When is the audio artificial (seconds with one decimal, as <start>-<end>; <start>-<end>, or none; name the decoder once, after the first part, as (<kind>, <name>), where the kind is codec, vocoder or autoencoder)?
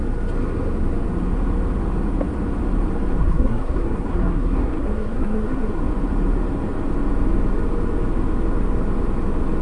3.2-5.8 (codec, SNAC)